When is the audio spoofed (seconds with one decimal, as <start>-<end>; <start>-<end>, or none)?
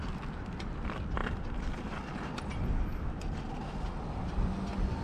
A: 1.2-3.4